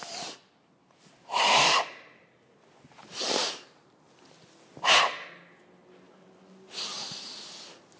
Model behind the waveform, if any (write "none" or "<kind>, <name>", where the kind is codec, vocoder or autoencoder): none